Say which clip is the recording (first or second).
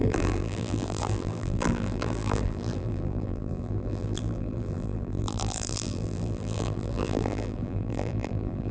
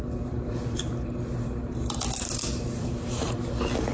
second